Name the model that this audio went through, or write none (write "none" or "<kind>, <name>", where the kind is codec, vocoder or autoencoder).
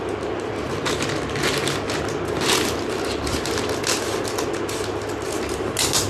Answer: none